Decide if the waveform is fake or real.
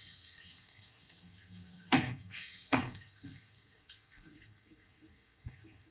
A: fake